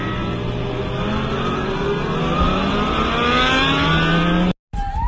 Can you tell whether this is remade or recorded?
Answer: recorded